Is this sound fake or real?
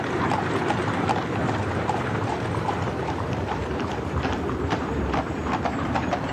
fake